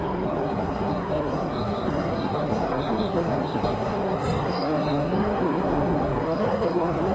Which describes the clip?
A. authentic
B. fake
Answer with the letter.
B